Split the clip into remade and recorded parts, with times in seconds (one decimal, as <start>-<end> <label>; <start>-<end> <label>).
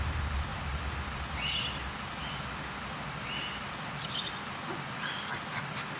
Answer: 0.0-6.0 recorded